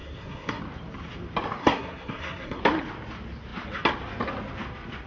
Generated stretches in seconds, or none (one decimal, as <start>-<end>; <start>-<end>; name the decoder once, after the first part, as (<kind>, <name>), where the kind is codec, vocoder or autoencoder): 0.0-0.6 (codec, SNAC); 1.6-2.6

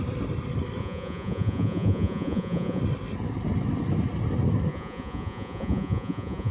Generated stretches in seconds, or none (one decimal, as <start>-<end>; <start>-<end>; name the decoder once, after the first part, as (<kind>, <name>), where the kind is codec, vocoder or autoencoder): 0.8-2.8 (vocoder, Vocos); 4.7-6.5

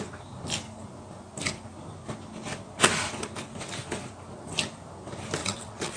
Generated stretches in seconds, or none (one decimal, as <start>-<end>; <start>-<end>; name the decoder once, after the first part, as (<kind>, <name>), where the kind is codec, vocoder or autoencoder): 5.4-6.0 (vocoder, WaveNeXt)